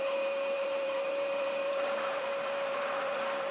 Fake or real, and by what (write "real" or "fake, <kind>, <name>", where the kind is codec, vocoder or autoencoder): fake, vocoder, BigVGAN v2